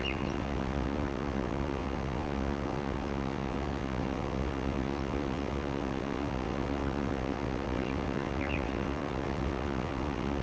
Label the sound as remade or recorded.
remade